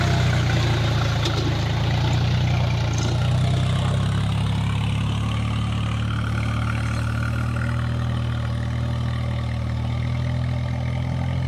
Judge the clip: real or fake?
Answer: real